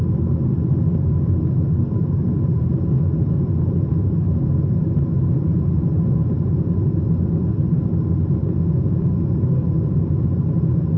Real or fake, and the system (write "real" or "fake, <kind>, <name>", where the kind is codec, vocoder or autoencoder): real